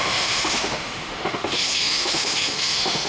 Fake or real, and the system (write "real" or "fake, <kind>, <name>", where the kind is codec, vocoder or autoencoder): fake, autoencoder, DAC-VAE